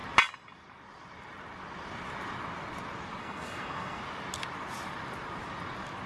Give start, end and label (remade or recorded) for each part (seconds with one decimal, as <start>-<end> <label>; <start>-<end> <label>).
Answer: 0.0-3.2 recorded; 3.2-4.0 remade; 4.0-6.1 recorded